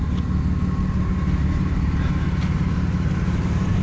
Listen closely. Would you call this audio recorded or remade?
recorded